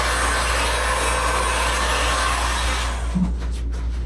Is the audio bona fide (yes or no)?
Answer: yes